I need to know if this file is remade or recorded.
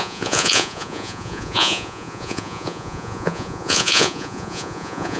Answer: remade